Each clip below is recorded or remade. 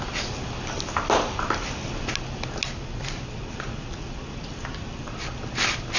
recorded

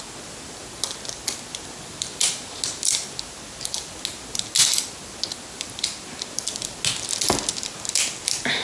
recorded